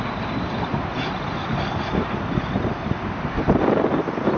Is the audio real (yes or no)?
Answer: no